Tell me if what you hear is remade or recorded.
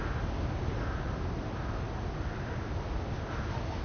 recorded